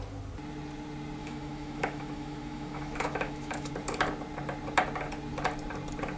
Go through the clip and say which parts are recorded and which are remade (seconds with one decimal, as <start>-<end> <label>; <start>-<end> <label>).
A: 0.0-1.2 recorded; 1.2-3.7 remade; 3.7-6.2 recorded